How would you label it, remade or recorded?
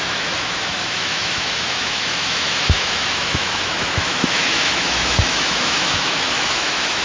remade